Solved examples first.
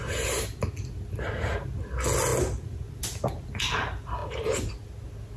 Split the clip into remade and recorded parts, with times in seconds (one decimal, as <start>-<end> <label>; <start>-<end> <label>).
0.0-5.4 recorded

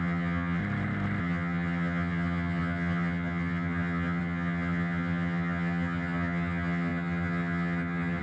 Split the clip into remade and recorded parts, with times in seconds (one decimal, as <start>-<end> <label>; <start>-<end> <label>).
0.0-0.6 remade; 0.6-1.2 recorded; 1.2-8.2 remade

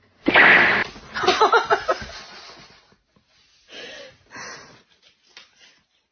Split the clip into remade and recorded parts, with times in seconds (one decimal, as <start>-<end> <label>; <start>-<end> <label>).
0.0-6.1 recorded

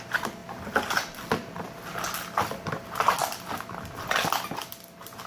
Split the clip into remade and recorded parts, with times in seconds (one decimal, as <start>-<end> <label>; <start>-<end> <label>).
0.0-5.3 recorded